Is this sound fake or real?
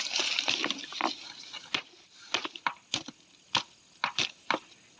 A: real